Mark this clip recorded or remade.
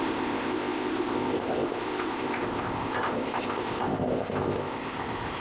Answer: remade